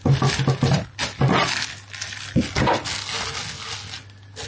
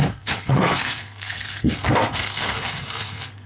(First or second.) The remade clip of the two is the second